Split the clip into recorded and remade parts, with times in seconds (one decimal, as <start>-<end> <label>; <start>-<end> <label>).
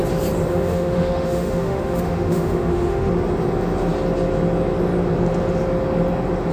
0.0-0.5 recorded; 0.5-3.1 remade; 3.1-6.5 recorded